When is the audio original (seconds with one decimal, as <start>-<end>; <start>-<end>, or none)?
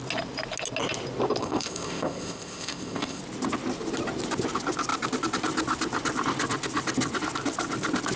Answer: 0.0-1.4; 3.2-8.2